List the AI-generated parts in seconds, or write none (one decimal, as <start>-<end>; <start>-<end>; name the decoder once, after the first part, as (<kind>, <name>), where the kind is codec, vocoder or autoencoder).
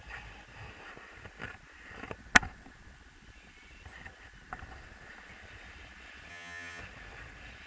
6.3-6.8 (vocoder, HiFi-GAN)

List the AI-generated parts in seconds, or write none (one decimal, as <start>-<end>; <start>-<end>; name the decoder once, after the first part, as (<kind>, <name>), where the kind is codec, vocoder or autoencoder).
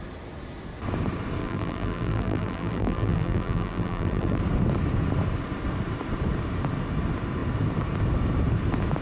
1.4-4.4 (vocoder, BigVGAN v2)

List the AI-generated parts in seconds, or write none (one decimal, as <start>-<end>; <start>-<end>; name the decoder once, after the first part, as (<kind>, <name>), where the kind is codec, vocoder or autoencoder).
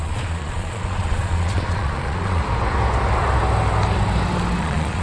0.0-2.4 (vocoder, Vocos); 4.6-5.0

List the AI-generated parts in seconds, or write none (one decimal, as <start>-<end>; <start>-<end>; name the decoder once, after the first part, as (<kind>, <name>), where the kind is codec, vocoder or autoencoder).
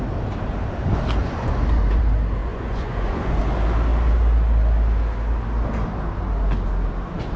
1.2-2.0 (vocoder, Vocos); 2.4-3.4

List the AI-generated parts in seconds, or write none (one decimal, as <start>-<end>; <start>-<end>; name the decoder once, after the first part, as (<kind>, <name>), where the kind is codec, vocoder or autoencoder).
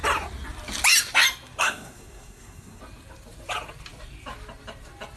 1.6-2.8 (codec, SNAC)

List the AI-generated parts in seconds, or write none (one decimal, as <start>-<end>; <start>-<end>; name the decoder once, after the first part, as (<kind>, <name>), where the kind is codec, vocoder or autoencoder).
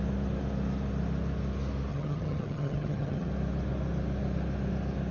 1.9-3.3 (vocoder, HiFi-GAN)